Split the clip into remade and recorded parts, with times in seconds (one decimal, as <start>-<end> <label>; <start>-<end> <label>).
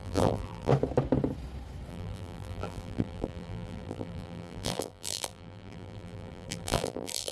0.0-0.7 remade; 0.7-1.9 recorded; 1.9-7.3 remade